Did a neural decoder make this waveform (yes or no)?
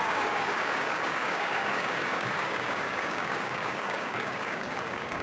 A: yes